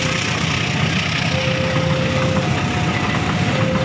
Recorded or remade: recorded